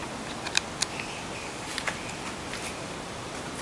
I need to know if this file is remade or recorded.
recorded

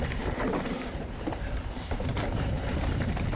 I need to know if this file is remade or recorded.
remade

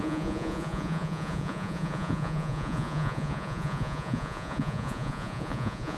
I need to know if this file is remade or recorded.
remade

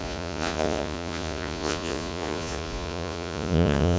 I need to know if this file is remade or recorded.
remade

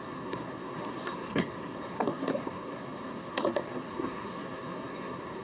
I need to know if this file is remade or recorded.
remade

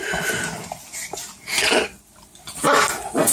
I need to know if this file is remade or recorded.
recorded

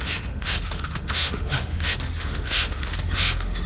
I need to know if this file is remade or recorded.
remade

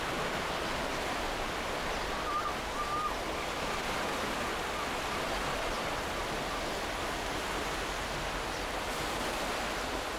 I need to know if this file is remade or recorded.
recorded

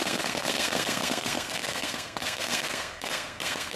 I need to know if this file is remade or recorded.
remade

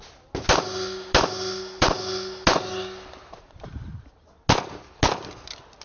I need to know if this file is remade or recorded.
recorded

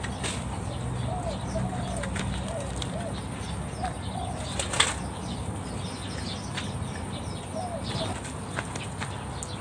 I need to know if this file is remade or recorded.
recorded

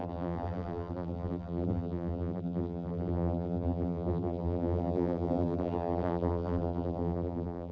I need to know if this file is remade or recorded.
remade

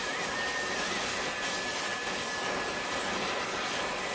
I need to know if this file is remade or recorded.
recorded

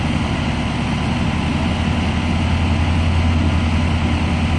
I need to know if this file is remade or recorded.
recorded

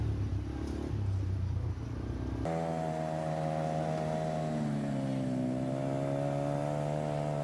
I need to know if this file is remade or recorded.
recorded